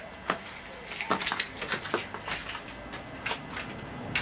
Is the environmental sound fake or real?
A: real